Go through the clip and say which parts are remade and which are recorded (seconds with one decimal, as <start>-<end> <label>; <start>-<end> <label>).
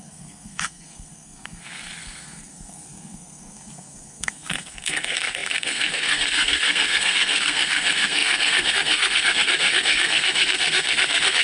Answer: 0.0-11.4 remade